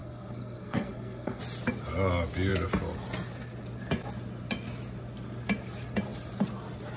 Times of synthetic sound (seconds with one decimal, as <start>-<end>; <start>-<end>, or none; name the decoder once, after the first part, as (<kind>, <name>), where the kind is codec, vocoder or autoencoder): 0.0-1.4 (codec, SNAC)

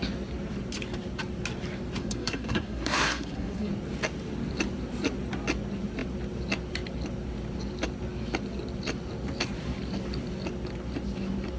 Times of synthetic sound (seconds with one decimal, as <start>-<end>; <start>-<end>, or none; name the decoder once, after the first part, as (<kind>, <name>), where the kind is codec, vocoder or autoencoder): 2.0-3.7 (codec, SNAC)

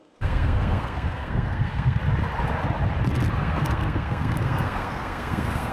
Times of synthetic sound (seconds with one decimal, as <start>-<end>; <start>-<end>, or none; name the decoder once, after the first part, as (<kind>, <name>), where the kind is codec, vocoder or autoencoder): 0.0-2.0 (codec, SNAC); 3.4-5.7

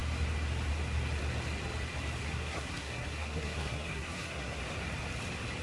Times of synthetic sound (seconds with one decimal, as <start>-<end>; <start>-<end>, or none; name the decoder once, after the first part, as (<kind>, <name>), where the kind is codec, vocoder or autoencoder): 2.2-4.6 (codec, SNAC)